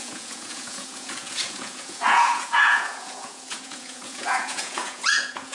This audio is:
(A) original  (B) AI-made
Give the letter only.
B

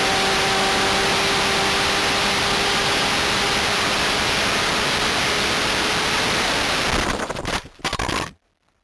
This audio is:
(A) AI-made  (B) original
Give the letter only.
B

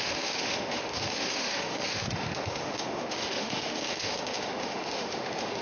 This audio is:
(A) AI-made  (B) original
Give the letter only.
A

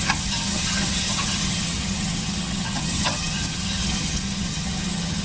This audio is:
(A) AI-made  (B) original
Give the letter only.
A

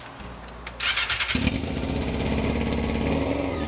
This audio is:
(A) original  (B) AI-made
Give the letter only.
A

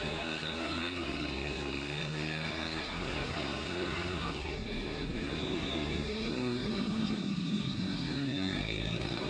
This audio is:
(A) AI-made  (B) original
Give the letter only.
A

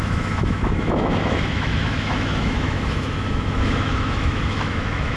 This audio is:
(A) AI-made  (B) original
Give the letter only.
A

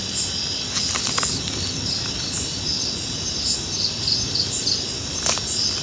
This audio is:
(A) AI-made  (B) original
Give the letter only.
B